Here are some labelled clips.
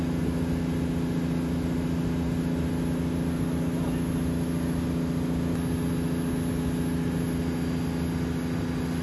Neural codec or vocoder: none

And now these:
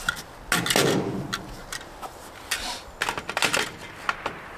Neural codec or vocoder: none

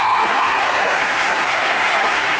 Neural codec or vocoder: codec, SNAC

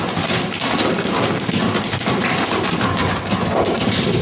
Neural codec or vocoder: none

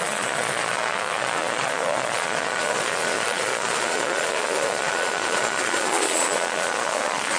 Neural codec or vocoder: vocoder, Vocos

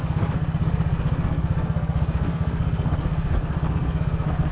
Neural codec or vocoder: codec, SNAC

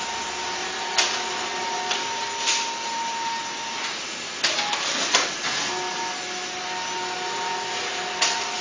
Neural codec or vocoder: none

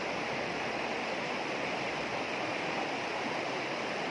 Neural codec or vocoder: none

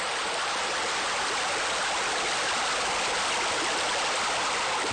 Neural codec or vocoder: none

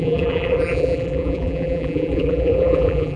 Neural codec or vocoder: vocoder, BigVGAN v2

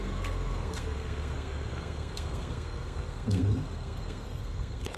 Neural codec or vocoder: codec, SNAC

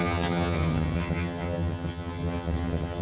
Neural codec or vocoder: vocoder, HiFi-GAN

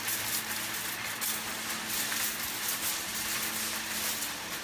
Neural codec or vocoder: none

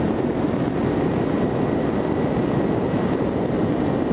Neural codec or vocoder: none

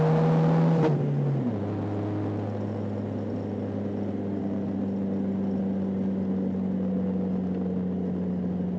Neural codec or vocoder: none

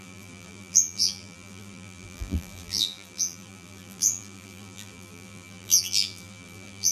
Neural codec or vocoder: vocoder, BigVGAN v2